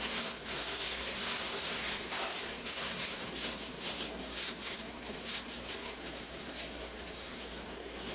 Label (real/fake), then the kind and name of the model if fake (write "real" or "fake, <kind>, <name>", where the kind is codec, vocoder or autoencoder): fake, codec, SNAC